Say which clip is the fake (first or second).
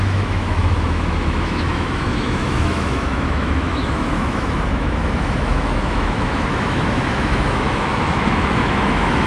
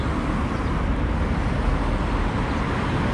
first